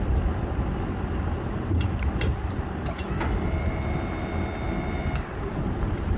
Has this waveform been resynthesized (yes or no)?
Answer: yes